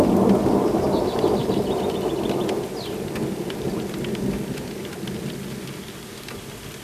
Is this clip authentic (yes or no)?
yes